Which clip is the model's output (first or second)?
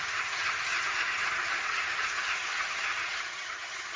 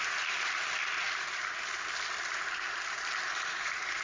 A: first